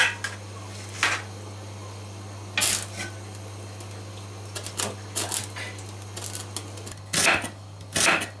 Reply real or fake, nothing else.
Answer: real